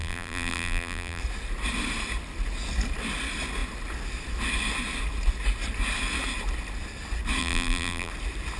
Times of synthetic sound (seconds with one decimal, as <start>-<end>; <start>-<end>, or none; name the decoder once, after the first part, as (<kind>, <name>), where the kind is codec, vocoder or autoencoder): 0.0-1.2 (vocoder, BigVGAN v2); 7.4-8.1